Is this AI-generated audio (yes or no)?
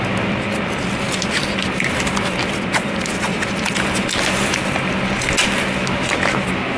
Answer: no